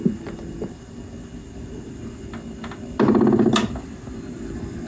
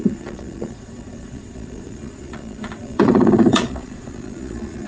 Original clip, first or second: first